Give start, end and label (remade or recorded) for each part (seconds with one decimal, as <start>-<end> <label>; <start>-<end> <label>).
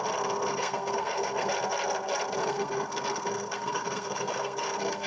0.0-0.5 recorded; 0.5-1.5 remade; 1.5-2.4 recorded; 2.4-5.1 remade